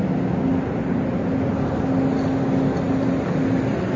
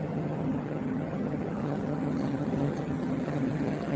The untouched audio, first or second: first